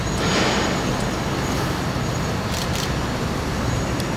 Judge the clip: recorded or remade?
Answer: recorded